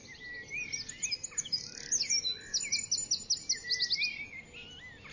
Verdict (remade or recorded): recorded